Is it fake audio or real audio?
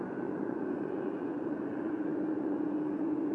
fake